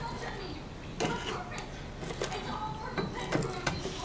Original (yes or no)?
yes